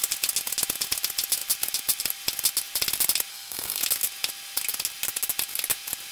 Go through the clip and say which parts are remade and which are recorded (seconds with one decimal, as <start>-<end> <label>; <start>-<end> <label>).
0.0-3.3 recorded; 3.3-3.8 remade; 3.8-6.1 recorded